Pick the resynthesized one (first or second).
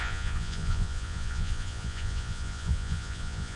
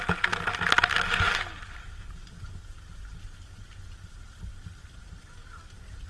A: first